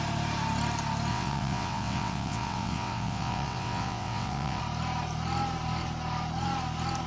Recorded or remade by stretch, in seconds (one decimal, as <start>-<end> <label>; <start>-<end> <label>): 0.0-1.1 recorded; 1.1-4.6 remade; 4.6-7.1 recorded